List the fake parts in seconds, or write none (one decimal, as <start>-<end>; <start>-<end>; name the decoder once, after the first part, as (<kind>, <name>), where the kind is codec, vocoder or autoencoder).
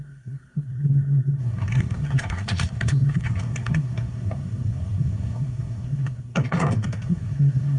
0.0-7.8 (codec, SNAC)